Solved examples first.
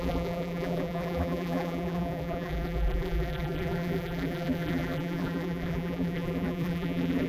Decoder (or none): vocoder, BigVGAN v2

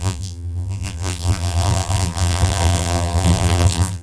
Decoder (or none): vocoder, BigVGAN v2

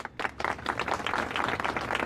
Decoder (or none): none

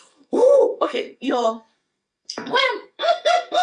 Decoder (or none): codec, SNAC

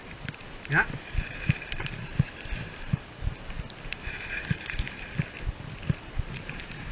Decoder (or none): none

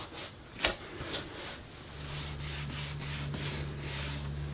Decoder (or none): none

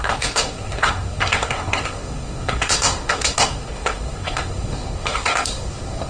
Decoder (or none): codec, SNAC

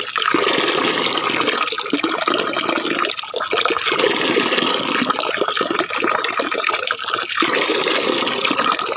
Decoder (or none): none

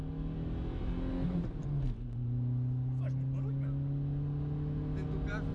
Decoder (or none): none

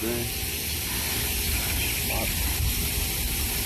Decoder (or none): none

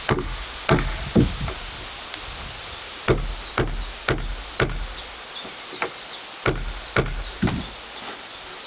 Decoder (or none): none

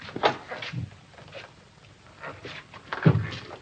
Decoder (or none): none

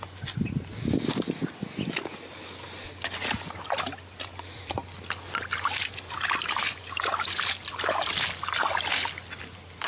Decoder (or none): none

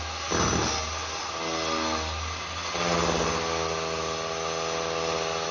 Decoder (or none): none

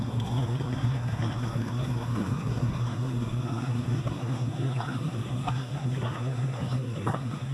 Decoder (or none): codec, SNAC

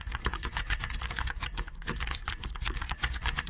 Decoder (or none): vocoder, Vocos